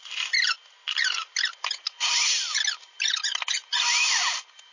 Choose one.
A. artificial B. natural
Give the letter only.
B